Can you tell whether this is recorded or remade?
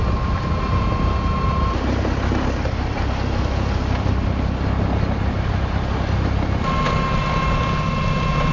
recorded